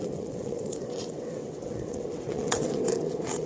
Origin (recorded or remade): remade